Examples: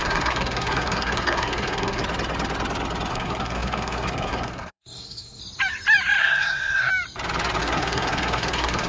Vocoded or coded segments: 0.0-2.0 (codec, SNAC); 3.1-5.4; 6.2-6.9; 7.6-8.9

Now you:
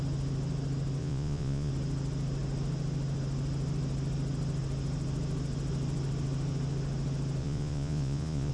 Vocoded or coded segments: 1.0-1.7 (vocoder, Vocos); 7.4-8.5

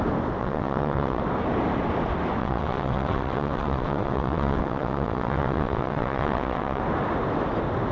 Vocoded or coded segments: 0.4-1.2 (vocoder, WaveNeXt); 2.4-6.8

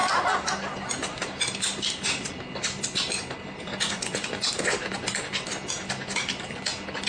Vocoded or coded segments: 3.7-4.5 (vocoder, Vocos)